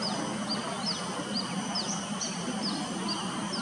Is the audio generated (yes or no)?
no